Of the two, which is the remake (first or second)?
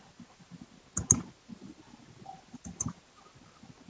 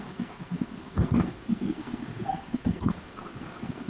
second